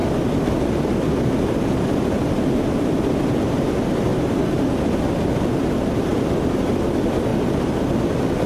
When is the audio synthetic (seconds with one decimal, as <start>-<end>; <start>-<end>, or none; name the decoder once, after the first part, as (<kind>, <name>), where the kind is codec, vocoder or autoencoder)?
2.2-4.1 (vocoder, BigVGAN v2); 5.2-6.1; 6.7-7.3